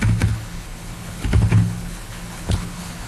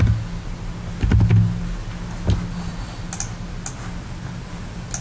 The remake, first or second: first